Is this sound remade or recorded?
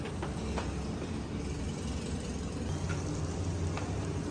recorded